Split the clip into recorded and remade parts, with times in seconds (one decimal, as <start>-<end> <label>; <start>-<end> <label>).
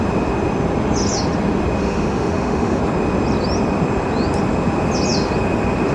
0.0-1.8 recorded; 1.8-2.8 remade; 2.8-5.9 recorded